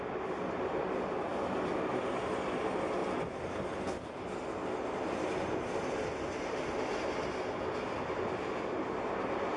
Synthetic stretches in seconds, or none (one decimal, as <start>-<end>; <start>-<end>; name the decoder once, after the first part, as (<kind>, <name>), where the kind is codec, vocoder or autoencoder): 1.3-2.1 (vocoder, BigVGAN v2); 3.0-3.5